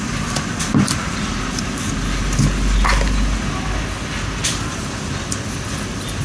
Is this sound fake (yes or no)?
no